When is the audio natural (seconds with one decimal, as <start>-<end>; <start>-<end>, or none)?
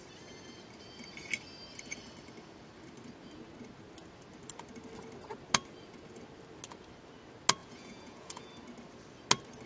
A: 0.0-7.6; 8.5-9.7